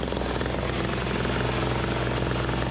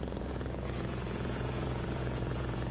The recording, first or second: first